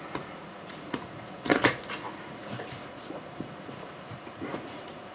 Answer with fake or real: fake